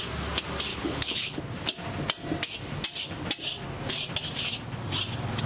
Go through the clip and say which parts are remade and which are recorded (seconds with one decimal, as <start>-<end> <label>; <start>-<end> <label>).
0.0-0.7 recorded; 0.7-1.4 remade; 1.4-5.5 recorded